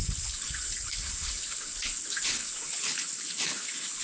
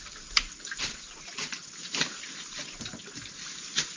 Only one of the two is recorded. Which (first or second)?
second